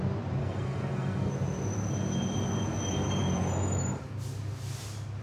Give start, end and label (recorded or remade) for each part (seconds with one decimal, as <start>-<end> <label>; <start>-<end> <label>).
0.0-0.4 recorded; 0.4-1.3 remade; 1.3-5.2 recorded